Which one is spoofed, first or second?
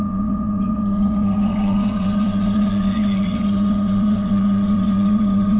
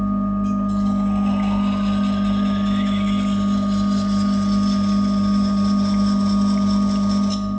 first